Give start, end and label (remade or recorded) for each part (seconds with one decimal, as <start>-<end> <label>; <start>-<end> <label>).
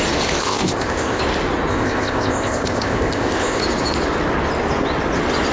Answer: 0.0-0.4 recorded; 0.4-1.2 remade; 1.2-1.7 recorded; 1.7-3.6 remade; 3.6-5.5 recorded